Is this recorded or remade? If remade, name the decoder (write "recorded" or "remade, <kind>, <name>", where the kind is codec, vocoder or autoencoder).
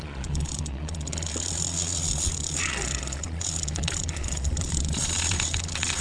remade, vocoder, Vocos